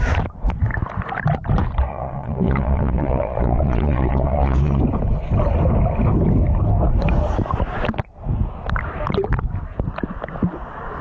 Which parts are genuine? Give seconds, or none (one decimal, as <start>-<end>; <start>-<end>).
0.0-1.9; 4.8-11.0